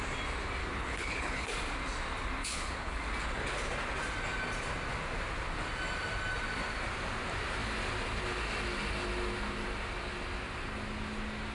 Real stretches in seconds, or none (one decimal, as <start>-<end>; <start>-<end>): 0.0-0.6; 1.5-2.4; 3.0-11.5